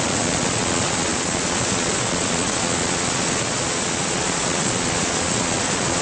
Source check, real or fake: fake